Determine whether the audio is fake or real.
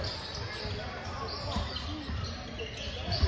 real